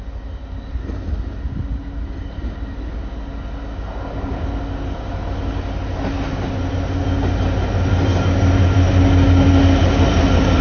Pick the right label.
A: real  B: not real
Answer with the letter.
A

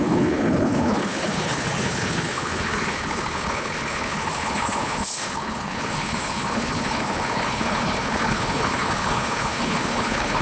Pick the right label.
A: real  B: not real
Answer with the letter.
B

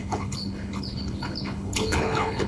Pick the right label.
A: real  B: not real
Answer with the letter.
B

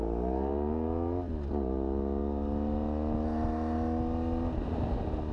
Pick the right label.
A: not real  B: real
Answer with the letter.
B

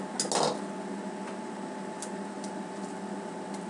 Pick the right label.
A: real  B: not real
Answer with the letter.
A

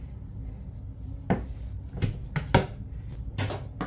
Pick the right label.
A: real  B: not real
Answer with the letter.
A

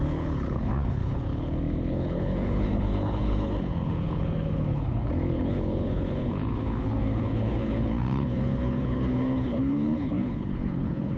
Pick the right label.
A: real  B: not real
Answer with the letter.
B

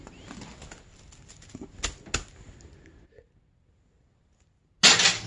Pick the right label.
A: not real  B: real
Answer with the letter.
B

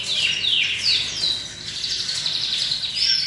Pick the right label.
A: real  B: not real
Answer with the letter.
A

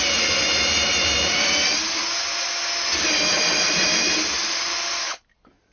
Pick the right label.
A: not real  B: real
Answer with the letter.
B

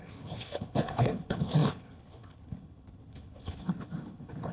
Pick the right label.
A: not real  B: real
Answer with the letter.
A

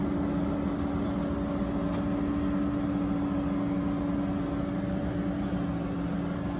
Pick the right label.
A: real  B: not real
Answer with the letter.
A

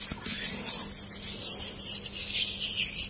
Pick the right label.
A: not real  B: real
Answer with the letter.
B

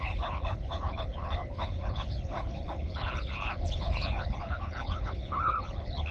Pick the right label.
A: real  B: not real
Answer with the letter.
B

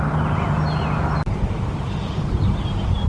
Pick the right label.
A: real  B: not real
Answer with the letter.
A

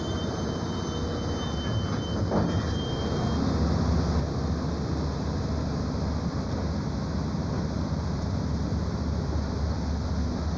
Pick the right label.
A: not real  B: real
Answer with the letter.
B